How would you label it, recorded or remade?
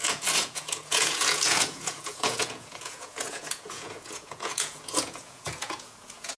remade